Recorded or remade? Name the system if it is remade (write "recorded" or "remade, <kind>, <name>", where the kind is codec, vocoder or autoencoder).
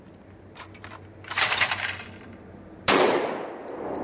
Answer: recorded